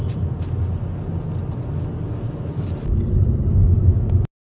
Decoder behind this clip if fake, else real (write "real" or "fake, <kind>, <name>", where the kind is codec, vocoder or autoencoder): real